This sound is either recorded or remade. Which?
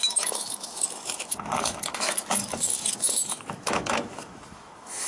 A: remade